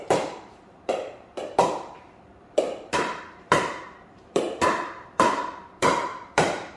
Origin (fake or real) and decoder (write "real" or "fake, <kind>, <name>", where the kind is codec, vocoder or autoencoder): fake, vocoder, BigVGAN v2